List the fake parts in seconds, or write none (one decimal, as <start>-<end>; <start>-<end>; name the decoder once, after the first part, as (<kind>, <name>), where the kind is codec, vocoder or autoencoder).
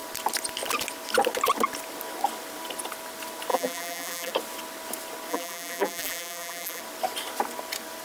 3.5-4.3 (vocoder, BigVGAN v2); 5.3-6.8